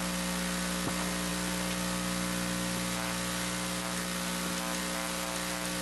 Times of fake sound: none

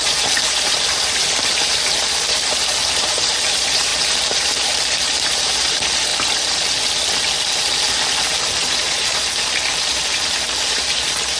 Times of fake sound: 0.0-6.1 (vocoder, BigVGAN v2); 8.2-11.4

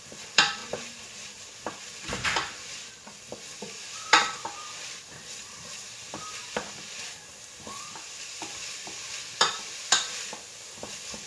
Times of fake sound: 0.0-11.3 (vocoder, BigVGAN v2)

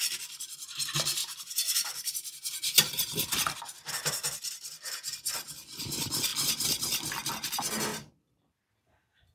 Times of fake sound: 1.2-3.6 (vocoder, BigVGAN v2)

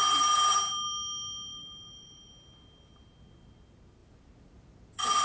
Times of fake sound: 1.5-2.3 (vocoder, BigVGAN v2)

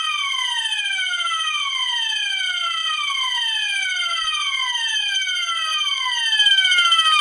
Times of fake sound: none

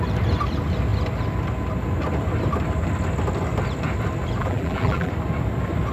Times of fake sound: 4.4-5.1 (vocoder, BigVGAN v2)

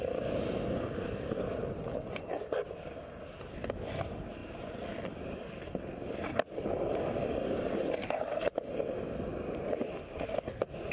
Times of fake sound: 1.6-2.3 (vocoder, BigVGAN v2); 4.4-5.8